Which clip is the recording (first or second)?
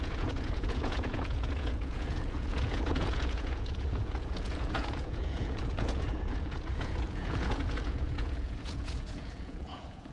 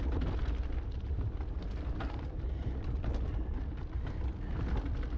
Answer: second